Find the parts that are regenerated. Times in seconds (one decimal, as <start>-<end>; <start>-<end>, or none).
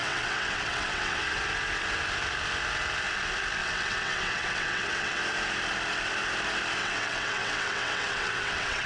0.0-1.2; 3.6-5.2; 6.8-8.9